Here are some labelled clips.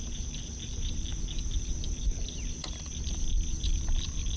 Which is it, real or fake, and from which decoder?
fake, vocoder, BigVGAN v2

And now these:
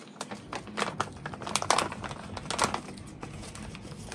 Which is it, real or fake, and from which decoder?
real